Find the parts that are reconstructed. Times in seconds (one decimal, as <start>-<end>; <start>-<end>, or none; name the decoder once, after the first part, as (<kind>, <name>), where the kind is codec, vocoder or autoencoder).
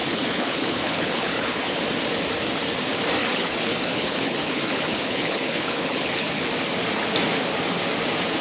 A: 0.0-1.8 (codec, HILCodec); 3.2-6.5